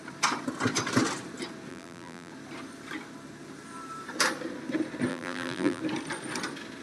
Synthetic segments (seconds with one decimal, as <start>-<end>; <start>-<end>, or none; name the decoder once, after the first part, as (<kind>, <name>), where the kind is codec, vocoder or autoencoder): 1.7-2.3 (vocoder, BigVGAN v2); 5.1-5.8